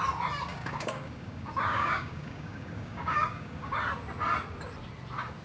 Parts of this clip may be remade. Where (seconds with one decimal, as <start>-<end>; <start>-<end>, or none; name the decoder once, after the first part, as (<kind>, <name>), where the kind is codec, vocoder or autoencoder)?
0.5-3.7 (codec, DAC)